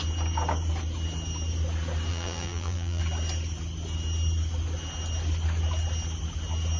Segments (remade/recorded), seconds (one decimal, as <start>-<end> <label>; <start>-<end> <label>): 0.0-2.1 recorded; 2.1-3.0 remade; 3.0-6.8 recorded